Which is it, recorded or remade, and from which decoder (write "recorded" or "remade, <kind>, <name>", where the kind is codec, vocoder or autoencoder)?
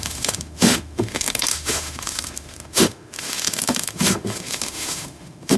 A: remade, autoencoder, DAC-VAE